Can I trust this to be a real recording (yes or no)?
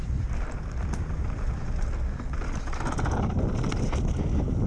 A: yes